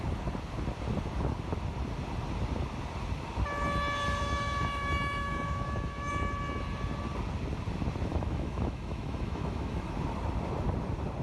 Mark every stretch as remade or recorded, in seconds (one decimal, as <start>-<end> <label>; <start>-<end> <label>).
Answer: 0.0-4.2 recorded; 4.2-6.1 remade; 6.1-8.1 recorded; 8.1-9.9 remade; 9.9-11.2 recorded